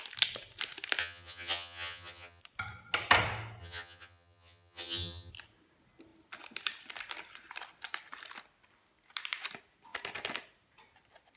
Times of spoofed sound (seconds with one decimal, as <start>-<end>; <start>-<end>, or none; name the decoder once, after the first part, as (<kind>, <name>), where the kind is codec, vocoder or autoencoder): 1.0-2.4 (vocoder, HiFi-GAN); 3.6-5.3